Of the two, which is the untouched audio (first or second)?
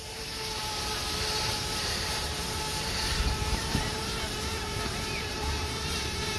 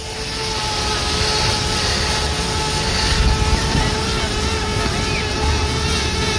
second